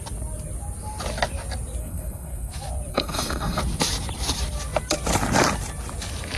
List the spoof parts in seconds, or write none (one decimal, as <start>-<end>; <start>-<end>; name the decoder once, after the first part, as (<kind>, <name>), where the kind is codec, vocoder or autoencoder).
1.8-2.5 (codec, SNAC); 2.9-3.6